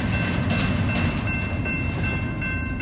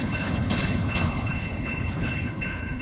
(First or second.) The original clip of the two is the first